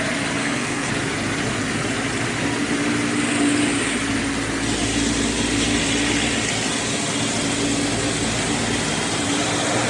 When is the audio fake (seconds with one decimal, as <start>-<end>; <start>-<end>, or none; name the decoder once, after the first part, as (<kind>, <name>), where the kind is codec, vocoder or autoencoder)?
0.4-0.9 (codec, SNAC)